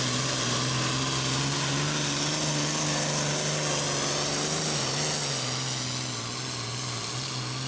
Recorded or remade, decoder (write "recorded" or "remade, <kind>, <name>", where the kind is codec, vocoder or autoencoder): recorded